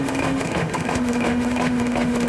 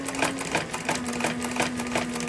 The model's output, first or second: first